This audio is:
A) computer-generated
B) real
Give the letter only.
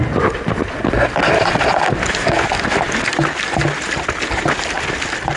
B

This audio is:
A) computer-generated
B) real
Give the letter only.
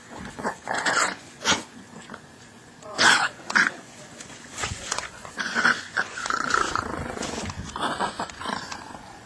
A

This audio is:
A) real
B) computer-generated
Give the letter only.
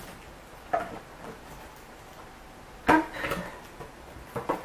A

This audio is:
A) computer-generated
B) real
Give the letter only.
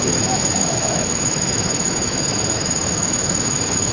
A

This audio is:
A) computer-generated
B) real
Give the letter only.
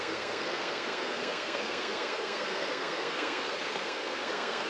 A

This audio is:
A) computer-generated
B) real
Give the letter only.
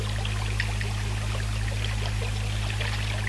B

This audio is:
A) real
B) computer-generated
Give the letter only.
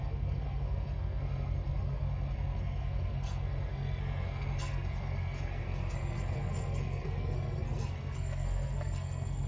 B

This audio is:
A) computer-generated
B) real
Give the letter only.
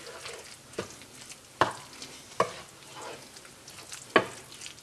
B